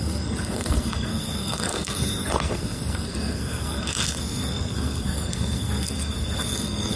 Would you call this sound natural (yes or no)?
no